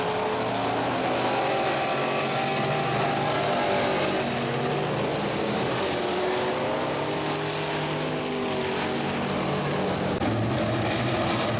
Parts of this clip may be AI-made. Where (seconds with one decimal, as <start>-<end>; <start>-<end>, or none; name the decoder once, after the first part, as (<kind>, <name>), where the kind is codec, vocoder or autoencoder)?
5.1-7.0 (vocoder, BigVGAN v2)